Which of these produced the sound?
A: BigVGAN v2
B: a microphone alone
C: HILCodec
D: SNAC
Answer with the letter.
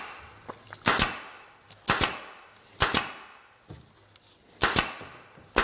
B